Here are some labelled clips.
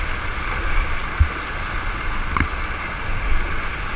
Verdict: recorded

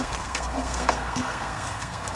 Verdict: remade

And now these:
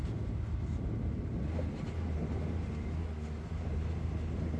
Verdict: recorded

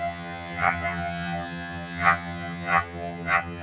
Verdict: remade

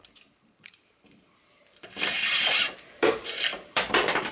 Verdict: remade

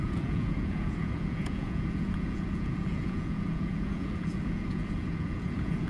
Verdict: remade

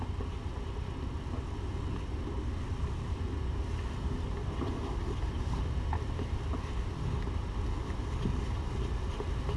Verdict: recorded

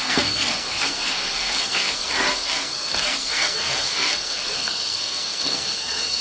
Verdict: remade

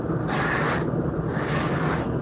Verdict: recorded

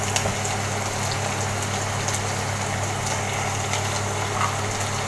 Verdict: recorded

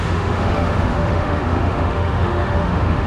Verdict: remade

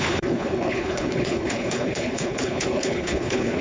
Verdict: remade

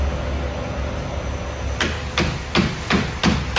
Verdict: recorded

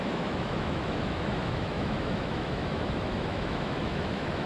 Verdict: remade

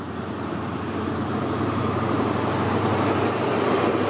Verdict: remade